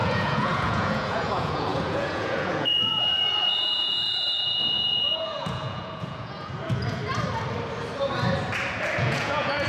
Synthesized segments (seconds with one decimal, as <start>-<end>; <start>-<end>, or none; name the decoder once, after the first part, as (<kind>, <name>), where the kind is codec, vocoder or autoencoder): 0.0-7.0 (vocoder, Vocos); 9.0-9.7